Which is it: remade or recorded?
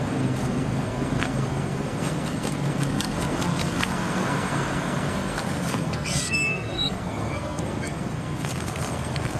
remade